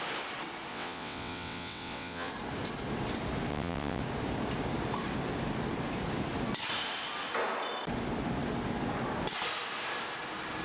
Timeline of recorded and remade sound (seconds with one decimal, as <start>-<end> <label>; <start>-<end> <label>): 0.0-0.7 recorded; 0.7-2.3 remade; 2.3-3.5 recorded; 3.5-4.0 remade; 4.0-10.6 recorded

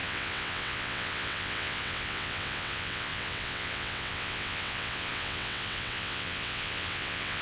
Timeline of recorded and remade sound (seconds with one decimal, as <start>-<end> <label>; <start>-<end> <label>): 0.0-7.4 remade

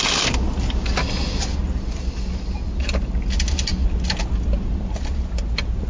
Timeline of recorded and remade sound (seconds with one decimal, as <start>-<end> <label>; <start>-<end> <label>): 0.0-5.9 recorded

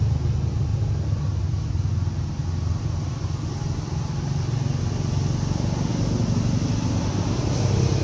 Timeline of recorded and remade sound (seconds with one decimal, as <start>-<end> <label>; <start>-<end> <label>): 0.0-8.0 recorded